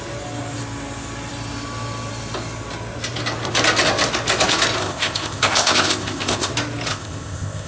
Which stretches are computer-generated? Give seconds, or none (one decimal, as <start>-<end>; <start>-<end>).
4.8-6.5; 6.9-7.7